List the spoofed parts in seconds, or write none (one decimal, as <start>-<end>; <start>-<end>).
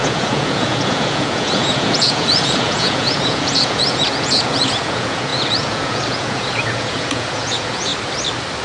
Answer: 0.0-7.9